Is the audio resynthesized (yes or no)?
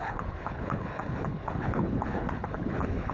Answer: yes